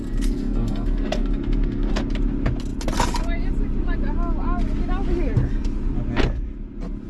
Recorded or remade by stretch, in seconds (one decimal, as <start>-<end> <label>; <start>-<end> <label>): 0.0-1.9 remade; 1.9-7.1 recorded

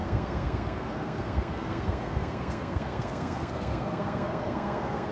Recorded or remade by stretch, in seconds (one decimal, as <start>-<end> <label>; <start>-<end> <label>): 0.0-5.1 remade

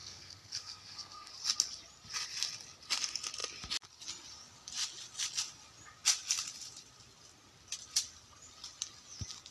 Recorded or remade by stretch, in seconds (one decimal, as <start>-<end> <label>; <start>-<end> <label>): 0.0-1.3 remade; 1.3-9.5 recorded